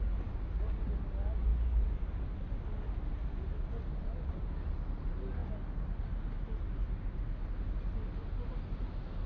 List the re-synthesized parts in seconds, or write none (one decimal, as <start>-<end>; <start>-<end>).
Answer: none